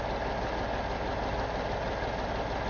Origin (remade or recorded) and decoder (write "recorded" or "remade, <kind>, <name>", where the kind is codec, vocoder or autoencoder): recorded